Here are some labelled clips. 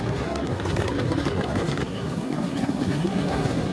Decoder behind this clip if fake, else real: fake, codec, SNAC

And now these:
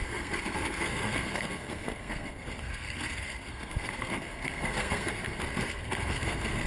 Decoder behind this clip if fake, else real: fake, codec, SNAC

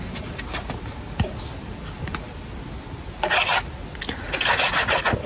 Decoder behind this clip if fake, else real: real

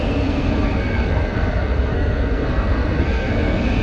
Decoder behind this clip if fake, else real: fake, codec, SNAC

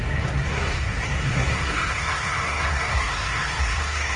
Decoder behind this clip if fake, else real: fake, codec, SNAC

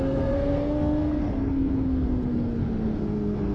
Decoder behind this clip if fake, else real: fake, codec, SNAC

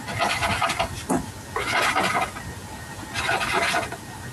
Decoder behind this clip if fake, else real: real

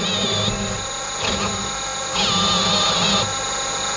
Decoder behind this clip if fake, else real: real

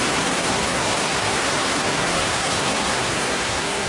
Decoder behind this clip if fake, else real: fake, codec, SNAC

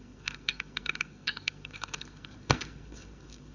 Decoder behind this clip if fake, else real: fake, codec, SNAC